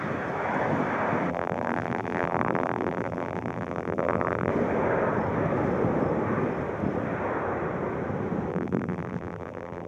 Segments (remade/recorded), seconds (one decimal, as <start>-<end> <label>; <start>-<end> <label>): 0.0-1.3 recorded; 1.3-4.5 remade; 4.5-8.5 recorded; 8.5-9.9 remade